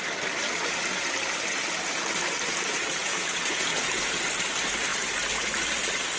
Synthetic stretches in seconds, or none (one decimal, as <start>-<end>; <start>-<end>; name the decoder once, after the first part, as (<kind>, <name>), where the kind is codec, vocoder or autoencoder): 3.0-4.1 (vocoder, Vocos)